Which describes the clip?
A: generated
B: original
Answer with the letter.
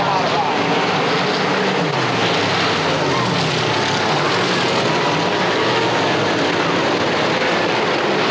B